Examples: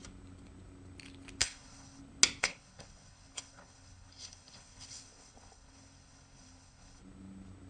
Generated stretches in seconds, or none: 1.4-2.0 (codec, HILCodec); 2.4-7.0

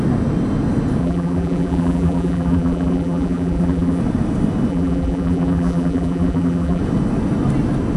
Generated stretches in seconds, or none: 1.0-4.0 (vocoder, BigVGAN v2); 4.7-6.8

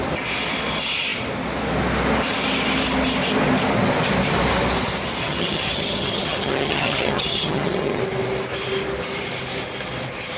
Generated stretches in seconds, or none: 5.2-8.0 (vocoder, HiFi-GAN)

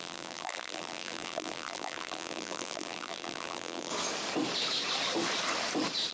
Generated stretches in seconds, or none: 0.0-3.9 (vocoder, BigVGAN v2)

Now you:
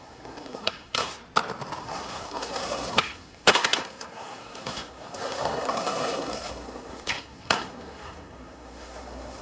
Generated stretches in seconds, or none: 0.0-1.2 (codec, SNAC); 1.8-9.4